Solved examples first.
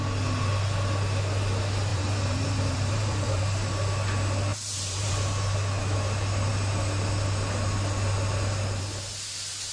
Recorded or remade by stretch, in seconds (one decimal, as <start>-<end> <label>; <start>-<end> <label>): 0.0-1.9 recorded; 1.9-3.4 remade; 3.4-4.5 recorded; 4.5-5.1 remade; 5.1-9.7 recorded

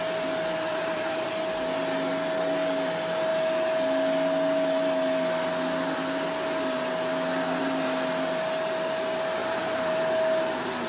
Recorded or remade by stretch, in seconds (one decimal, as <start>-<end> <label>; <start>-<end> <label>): 0.0-0.7 recorded; 0.7-1.3 remade; 1.3-9.4 recorded; 9.4-10.0 remade; 10.0-10.9 recorded

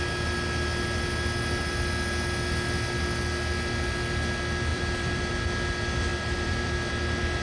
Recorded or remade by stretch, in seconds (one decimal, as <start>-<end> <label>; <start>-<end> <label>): 0.0-4.7 recorded; 4.7-5.3 remade; 5.3-6.1 recorded; 6.1-6.9 remade; 6.9-7.4 recorded

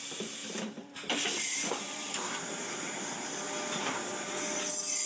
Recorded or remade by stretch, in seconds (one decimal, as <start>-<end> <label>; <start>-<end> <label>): 0.0-0.4 recorded; 0.4-3.0 remade; 3.0-5.1 recorded

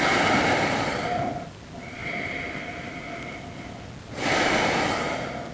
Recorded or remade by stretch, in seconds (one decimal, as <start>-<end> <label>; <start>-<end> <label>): 0.0-2.0 recorded; 2.0-3.0 remade; 3.0-5.5 recorded

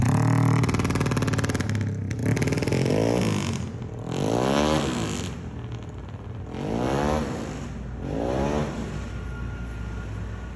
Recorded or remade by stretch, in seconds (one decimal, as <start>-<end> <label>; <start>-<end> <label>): 0.0-2.2 recorded; 2.2-2.9 remade; 2.9-10.6 recorded

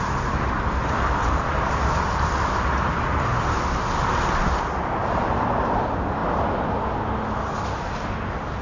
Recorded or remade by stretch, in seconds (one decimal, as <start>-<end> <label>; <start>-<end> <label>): 0.0-1.2 recorded; 1.2-4.0 remade; 4.0-5.0 recorded; 5.0-5.8 remade; 5.8-8.6 recorded

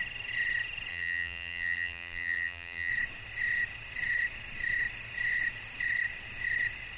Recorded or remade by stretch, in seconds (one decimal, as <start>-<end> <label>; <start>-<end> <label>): 0.0-0.9 recorded; 0.9-2.9 remade; 2.9-7.0 recorded